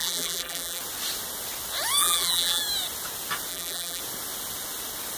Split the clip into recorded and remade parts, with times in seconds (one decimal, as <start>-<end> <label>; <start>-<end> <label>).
0.0-0.8 remade; 0.8-2.0 recorded; 2.0-2.6 remade; 2.6-3.5 recorded; 3.5-4.0 remade; 4.0-5.2 recorded